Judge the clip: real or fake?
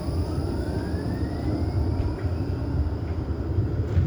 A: fake